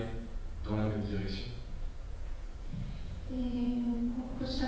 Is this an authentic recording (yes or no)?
no